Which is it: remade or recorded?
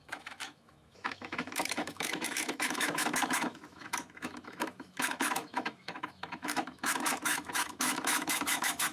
remade